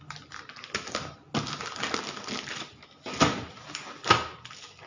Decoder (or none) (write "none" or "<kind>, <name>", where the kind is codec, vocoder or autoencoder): none